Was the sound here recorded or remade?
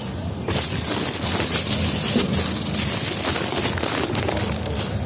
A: recorded